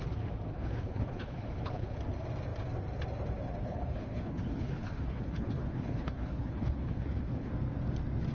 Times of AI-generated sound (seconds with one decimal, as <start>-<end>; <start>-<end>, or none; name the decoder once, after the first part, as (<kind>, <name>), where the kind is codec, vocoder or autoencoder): 0.5-2.0 (codec, HILCodec); 3.6-7.5